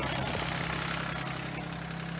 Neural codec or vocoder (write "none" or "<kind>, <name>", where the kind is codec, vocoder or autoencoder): none